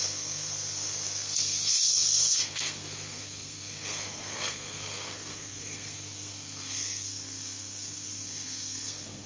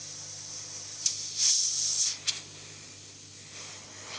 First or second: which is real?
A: second